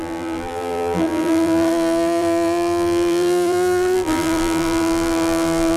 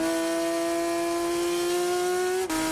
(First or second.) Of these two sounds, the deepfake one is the first